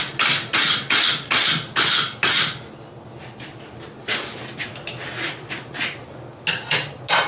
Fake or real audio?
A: real